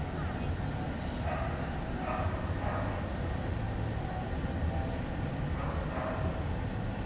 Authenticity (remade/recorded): recorded